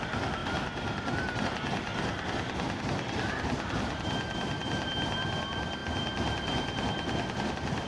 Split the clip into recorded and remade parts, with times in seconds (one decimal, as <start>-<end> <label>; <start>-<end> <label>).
0.0-0.4 remade; 0.4-1.4 recorded; 1.4-1.9 remade; 1.9-2.8 recorded; 2.8-5.8 remade; 5.8-7.5 recorded; 7.5-7.9 remade